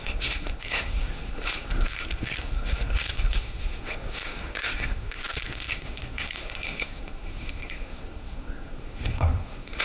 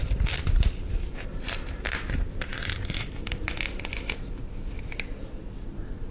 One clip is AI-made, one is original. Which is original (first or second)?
second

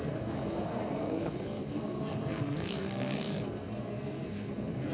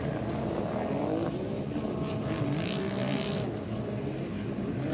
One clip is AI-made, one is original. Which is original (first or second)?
second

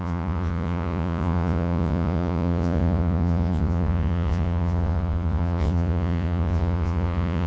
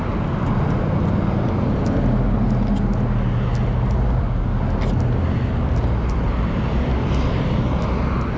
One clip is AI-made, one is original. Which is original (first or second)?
second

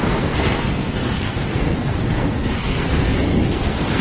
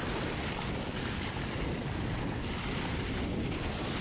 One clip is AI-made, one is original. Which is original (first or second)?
second